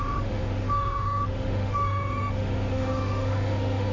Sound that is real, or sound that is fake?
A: fake